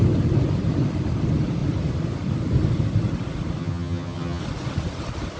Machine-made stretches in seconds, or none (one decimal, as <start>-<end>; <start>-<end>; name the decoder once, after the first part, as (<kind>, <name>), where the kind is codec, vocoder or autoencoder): 3.6-4.4 (vocoder, HiFi-GAN)